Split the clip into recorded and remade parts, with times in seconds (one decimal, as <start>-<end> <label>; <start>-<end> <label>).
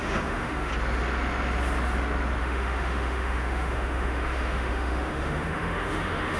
0.0-0.7 remade; 0.7-2.4 recorded; 2.4-6.4 remade